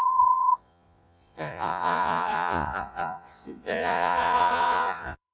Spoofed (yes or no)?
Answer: yes